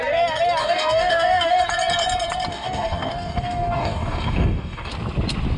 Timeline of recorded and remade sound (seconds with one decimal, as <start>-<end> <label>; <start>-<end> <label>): 0.0-0.6 recorded; 0.6-1.6 remade; 1.6-2.5 recorded; 2.5-4.9 remade; 4.9-5.6 recorded